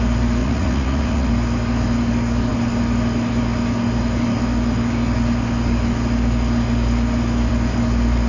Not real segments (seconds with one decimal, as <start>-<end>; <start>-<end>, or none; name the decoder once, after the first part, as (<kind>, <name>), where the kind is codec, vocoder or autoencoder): 0.4-1.3 (vocoder, Vocos)